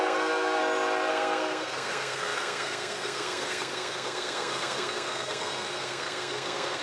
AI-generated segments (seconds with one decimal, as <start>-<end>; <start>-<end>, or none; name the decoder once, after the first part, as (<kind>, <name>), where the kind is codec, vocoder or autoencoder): 0.0-0.6 (codec, SNAC); 1.1-6.8